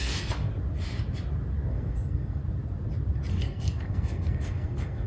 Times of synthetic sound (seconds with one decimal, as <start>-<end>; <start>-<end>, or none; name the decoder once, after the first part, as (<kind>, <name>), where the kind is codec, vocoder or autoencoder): 0.0-0.5 (codec, SNAC); 1.7-2.4; 3.3-5.1